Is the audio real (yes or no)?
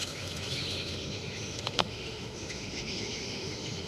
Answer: no